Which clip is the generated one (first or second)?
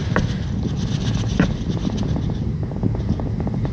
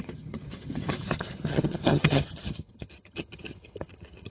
second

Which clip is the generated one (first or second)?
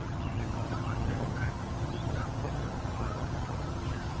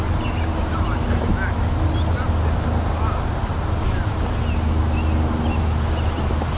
first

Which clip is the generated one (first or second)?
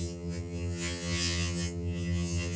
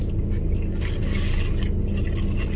first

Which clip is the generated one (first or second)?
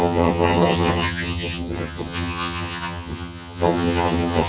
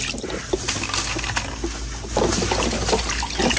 first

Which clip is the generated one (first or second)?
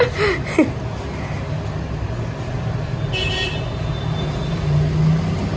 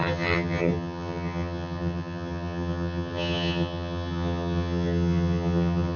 second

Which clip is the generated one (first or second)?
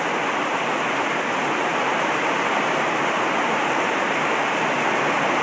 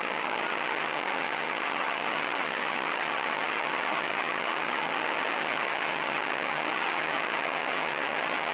second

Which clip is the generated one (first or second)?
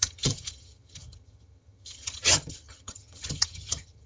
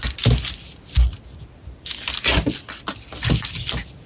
first